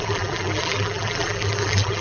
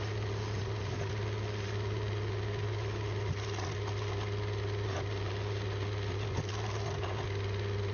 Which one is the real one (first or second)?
second